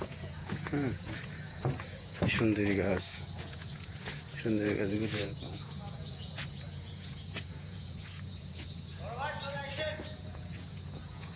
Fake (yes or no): yes